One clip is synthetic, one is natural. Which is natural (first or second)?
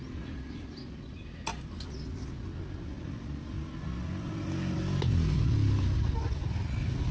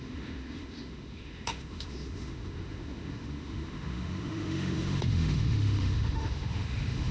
first